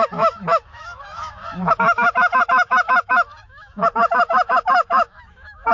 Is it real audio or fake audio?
fake